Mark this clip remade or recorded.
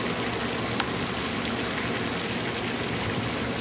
recorded